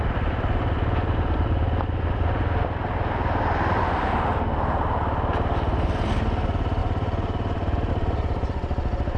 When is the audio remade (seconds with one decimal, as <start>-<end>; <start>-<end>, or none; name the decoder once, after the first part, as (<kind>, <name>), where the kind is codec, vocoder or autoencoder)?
6.8-7.9 (vocoder, BigVGAN v2)